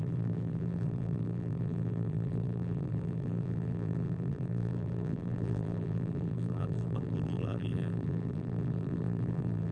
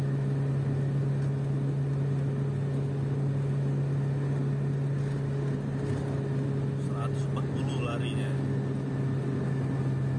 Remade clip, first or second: first